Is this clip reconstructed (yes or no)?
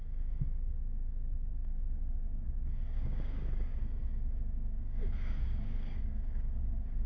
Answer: yes